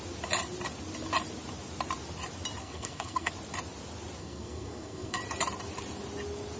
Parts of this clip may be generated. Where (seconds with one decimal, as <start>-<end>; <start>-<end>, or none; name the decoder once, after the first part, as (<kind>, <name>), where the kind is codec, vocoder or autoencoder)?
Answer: 2.6-3.3 (codec, SNAC); 4.2-5.2